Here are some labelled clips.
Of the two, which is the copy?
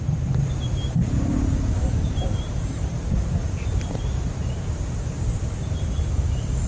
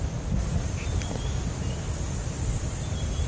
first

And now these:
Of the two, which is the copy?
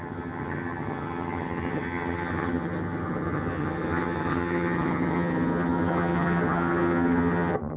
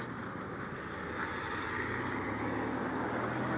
first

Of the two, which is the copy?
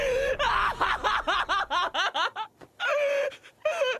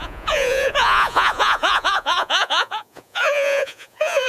second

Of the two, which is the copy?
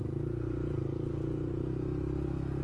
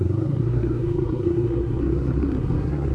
second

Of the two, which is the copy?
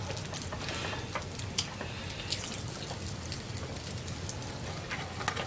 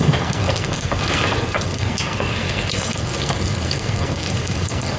second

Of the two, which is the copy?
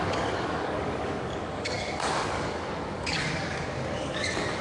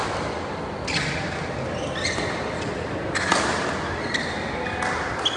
first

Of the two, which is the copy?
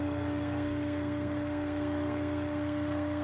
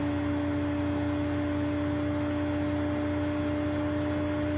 first